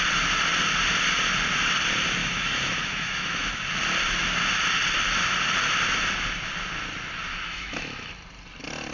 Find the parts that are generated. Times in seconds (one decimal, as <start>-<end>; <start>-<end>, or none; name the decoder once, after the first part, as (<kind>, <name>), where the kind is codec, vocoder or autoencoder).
2.2-3.5 (autoencoder, DAC-VAE); 7.3-8.1